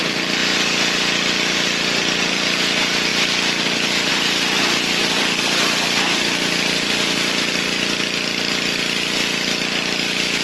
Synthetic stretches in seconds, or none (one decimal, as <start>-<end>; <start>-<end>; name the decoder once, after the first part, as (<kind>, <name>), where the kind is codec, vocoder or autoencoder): none